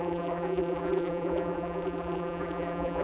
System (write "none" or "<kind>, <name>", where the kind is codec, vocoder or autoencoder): vocoder, BigVGAN v2